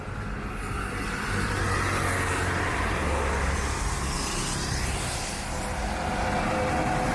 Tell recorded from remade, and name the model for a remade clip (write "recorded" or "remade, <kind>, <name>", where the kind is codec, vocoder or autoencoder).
recorded